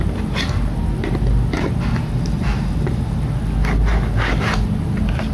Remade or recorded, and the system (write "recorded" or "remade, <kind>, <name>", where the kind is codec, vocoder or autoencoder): recorded